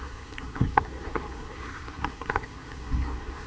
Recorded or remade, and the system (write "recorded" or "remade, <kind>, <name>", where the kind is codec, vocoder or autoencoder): remade, codec, SNAC